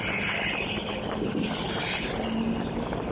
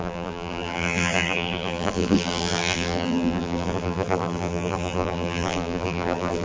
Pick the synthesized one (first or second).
second